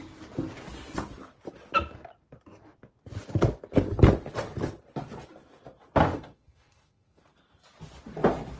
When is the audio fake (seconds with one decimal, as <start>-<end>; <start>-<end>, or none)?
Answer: 6.1-7.2